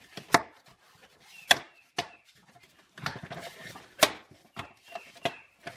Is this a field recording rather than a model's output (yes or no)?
yes